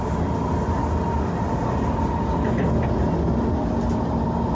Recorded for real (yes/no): yes